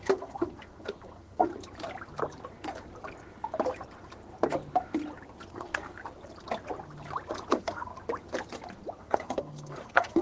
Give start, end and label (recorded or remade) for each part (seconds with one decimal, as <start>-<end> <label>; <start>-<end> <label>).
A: 0.0-1.5 remade; 1.5-5.5 recorded; 5.5-6.0 remade; 6.0-7.5 recorded; 7.5-7.9 remade; 7.9-9.0 recorded; 9.0-10.2 remade